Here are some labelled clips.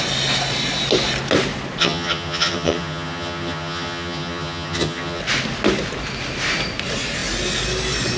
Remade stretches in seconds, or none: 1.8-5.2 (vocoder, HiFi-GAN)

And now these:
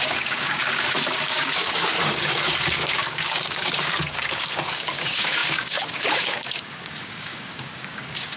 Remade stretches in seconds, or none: 0.0-8.4 (codec, DAC)

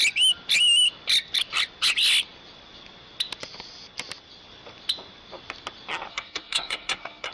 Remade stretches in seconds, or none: 6.1-7.3 (codec, SNAC)

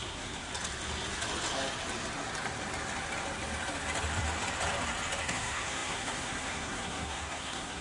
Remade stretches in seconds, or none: 0.0-0.5 (codec, SNAC); 5.2-7.8